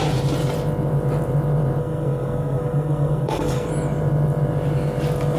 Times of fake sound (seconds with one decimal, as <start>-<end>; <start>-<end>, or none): 1.8-3.7